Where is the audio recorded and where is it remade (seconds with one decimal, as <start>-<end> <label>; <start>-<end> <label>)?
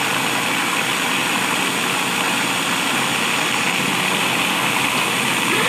0.0-5.7 recorded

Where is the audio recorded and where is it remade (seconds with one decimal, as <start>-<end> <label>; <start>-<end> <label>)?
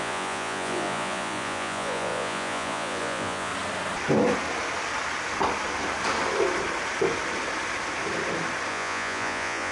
0.0-3.5 remade; 3.5-8.7 recorded; 8.7-9.7 remade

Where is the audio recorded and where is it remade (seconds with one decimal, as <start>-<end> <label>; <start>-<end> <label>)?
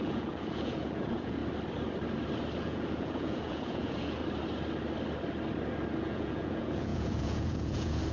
0.0-1.4 remade; 1.4-2.6 recorded; 2.6-4.2 remade; 4.2-6.0 recorded; 6.0-8.1 remade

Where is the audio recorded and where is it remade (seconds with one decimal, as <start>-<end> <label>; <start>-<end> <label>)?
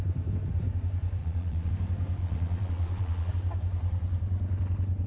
0.0-1.2 recorded; 1.2-1.7 remade; 1.7-2.2 recorded; 2.2-3.3 remade; 3.3-5.1 recorded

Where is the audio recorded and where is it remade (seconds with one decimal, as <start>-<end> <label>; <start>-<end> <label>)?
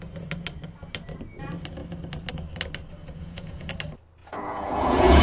0.0-3.0 recorded; 3.0-3.7 remade; 3.7-4.2 recorded; 4.2-5.2 remade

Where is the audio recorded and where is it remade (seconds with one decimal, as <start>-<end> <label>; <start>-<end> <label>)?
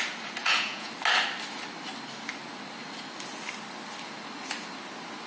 0.0-0.4 recorded; 0.4-0.9 remade; 0.9-5.3 recorded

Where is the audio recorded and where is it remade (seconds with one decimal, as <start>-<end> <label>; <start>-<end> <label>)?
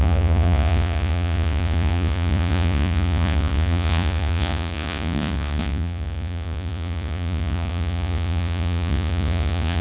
0.0-9.8 remade